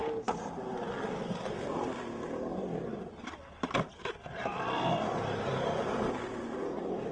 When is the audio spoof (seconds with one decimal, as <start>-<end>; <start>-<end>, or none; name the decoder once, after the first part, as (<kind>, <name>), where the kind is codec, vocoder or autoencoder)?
none